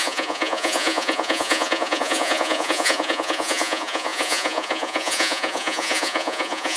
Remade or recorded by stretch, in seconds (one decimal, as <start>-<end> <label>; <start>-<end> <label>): 0.0-6.8 remade